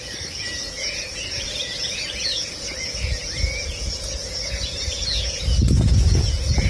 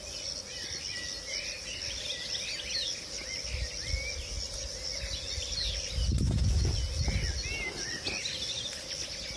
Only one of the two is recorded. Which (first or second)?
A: second